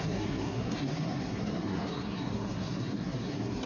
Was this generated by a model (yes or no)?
yes